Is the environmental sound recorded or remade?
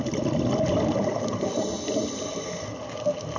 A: recorded